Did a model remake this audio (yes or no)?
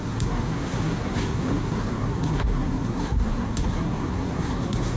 yes